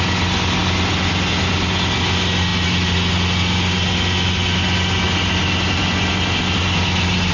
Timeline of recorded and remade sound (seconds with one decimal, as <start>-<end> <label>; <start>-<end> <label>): 0.0-7.3 recorded